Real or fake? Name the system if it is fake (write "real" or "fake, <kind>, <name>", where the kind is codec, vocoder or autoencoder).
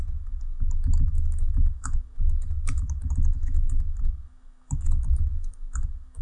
fake, autoencoder, DAC-VAE